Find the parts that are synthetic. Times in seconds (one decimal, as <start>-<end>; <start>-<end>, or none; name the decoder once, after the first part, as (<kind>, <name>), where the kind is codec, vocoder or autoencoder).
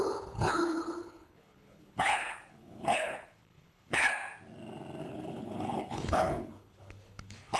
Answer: 0.0-4.1 (codec, HILCodec); 5.0-7.6